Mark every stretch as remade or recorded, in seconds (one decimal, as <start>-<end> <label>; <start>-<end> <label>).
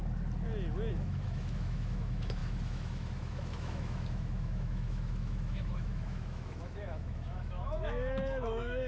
0.0-0.9 recorded; 0.9-8.9 remade